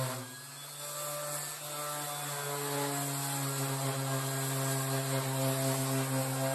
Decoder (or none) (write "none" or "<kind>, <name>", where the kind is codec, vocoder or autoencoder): none